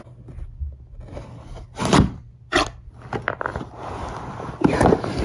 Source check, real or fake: real